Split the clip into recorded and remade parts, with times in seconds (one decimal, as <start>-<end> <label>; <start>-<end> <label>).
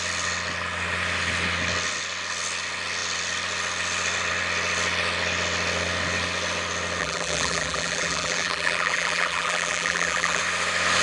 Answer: 0.0-7.0 recorded; 7.0-10.4 remade; 10.4-11.0 recorded